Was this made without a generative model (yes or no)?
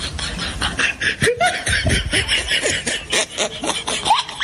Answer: yes